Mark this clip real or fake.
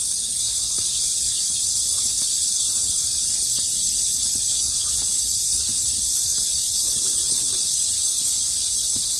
fake